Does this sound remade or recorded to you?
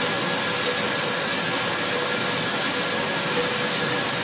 recorded